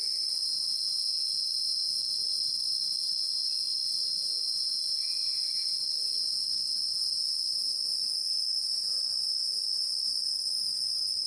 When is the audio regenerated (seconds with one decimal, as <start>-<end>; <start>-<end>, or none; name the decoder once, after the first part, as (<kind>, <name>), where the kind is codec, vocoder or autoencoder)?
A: 8.1-8.6 (codec, SNAC); 10.3-11.3